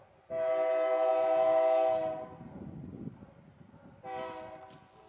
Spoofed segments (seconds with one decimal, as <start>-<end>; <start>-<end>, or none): none